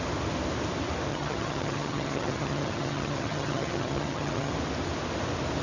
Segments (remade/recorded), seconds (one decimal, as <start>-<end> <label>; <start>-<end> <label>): 0.0-1.1 recorded; 1.1-4.5 remade; 4.5-5.6 recorded